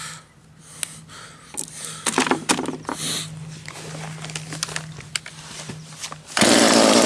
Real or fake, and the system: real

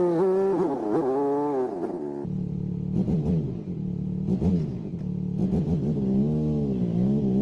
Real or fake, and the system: real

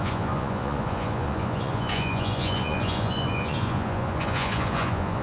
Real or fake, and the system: fake, vocoder, Vocos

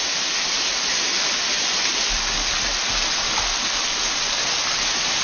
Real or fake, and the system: real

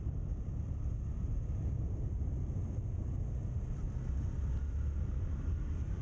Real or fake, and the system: real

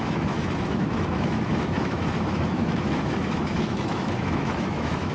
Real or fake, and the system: fake, autoencoder, DAC-VAE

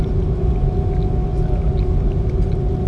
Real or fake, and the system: real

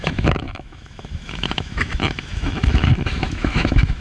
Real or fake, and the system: fake, autoencoder, DAC-VAE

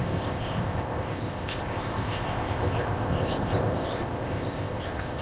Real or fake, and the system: fake, codec, ZipCodec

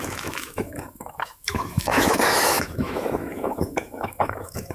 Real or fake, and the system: fake, autoencoder, DAC-VAE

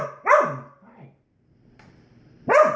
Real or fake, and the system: fake, vocoder, BigVGAN v2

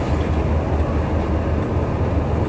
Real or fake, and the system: real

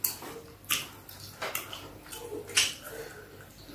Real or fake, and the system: real